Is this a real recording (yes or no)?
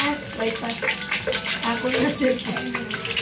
yes